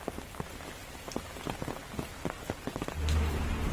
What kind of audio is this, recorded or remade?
recorded